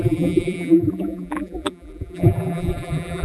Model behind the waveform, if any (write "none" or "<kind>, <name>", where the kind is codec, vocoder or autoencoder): vocoder, BigVGAN v2